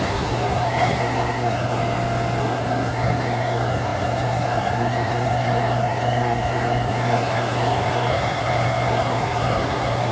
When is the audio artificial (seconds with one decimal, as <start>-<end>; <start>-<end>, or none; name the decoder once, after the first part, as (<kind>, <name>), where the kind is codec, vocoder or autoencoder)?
0.0-1.8 (codec, SNAC); 2.4-10.1